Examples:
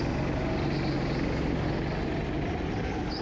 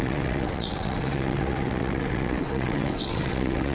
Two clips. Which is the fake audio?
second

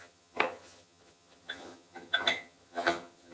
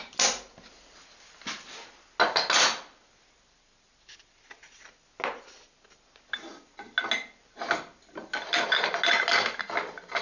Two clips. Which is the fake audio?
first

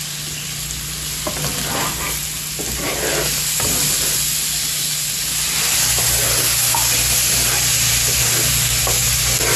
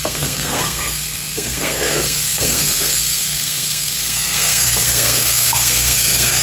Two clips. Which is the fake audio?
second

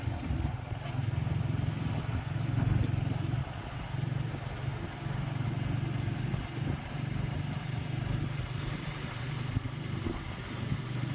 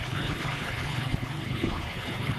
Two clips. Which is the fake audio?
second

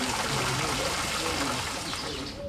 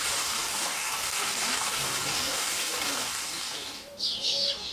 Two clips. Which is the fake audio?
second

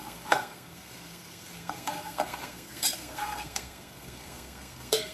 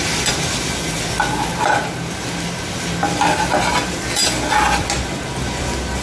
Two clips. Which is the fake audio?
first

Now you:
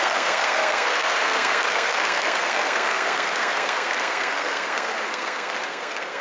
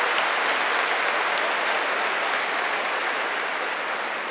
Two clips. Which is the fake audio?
first